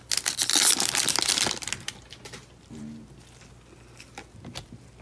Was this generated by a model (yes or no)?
no